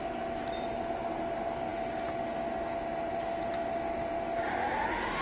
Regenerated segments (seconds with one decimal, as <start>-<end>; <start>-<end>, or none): none